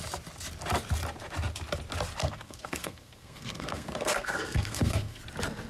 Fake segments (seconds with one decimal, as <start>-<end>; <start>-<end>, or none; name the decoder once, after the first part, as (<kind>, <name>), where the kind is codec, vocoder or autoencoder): 2.2-5.2 (codec, SNAC)